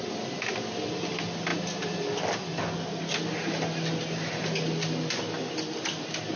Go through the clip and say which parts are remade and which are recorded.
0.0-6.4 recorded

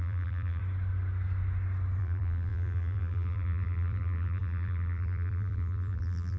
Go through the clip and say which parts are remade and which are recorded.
0.0-0.6 remade; 0.6-2.0 recorded; 2.0-6.4 remade

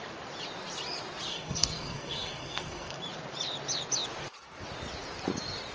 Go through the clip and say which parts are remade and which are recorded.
0.0-1.3 recorded; 1.3-3.0 remade; 3.0-5.7 recorded

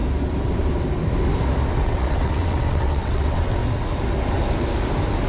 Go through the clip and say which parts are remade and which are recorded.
0.0-1.7 recorded; 1.7-3.6 remade; 3.6-5.3 recorded

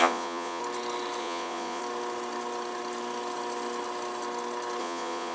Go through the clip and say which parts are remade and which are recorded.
0.0-0.6 remade; 0.6-1.2 recorded; 1.2-1.8 remade; 1.8-4.8 recorded; 4.8-5.3 remade

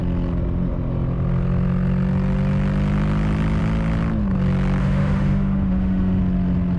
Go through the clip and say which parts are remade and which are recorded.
0.0-4.8 recorded; 4.8-6.2 remade; 6.2-6.8 recorded